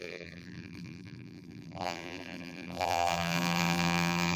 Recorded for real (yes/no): no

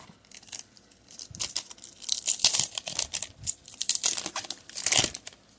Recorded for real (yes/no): no